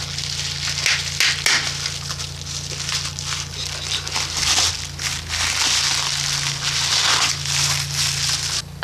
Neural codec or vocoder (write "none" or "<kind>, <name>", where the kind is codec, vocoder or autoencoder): none